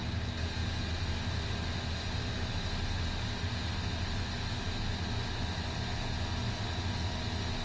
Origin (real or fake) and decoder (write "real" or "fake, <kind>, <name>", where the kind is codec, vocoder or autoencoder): real